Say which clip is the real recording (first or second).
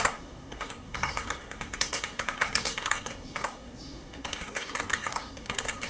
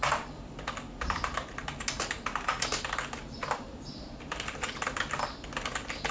second